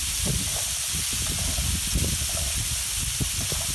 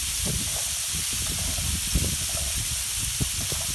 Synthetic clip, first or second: second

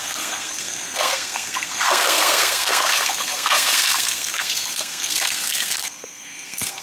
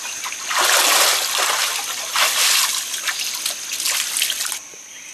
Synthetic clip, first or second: first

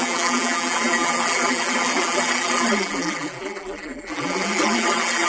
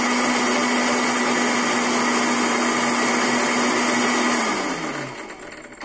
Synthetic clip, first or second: first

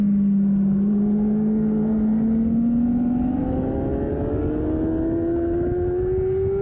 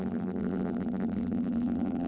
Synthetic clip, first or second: second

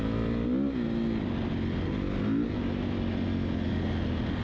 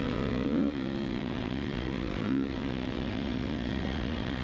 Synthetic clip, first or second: second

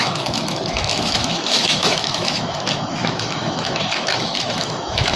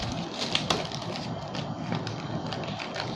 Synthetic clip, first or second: first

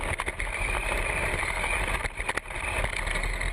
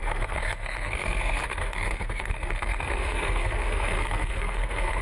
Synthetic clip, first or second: second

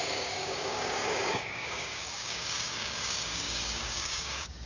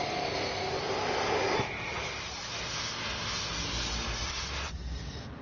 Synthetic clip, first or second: first